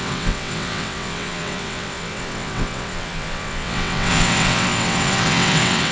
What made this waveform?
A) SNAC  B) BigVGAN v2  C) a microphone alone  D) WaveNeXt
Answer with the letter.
D